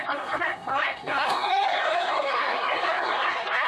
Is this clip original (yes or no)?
no